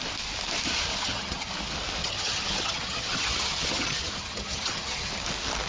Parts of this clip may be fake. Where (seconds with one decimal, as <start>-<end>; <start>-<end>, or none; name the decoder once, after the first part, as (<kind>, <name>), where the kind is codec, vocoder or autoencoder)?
0.9-1.5 (vocoder, HiFi-GAN); 2.0-5.1